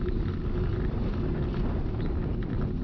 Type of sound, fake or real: real